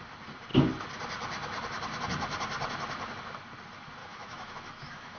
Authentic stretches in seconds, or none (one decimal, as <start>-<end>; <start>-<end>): 0.0-4.0